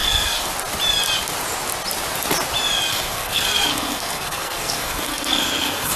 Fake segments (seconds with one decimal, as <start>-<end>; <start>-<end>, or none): 0.0-0.5; 2.9-6.0